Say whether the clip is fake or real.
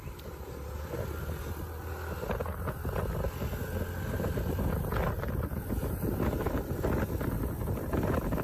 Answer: real